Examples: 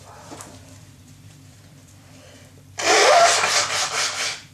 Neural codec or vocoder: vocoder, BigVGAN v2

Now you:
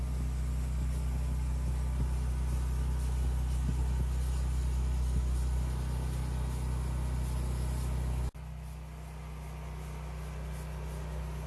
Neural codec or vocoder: none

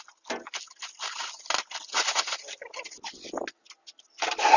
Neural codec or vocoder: none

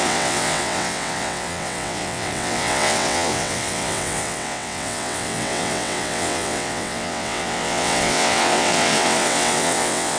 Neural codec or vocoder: vocoder, WaveNeXt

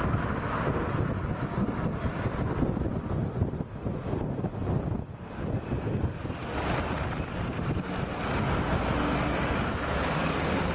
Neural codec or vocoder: none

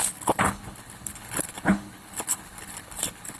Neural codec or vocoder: codec, HILCodec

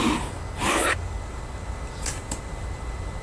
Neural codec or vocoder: none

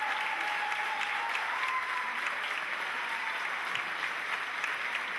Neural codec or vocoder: none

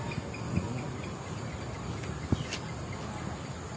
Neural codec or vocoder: none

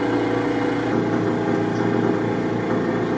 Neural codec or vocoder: none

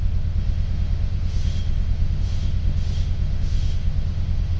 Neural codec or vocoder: autoencoder, DAC-VAE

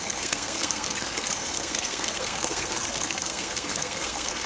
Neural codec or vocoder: codec, SNAC